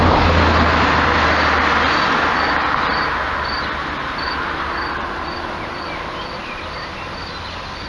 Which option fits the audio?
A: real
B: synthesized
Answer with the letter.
A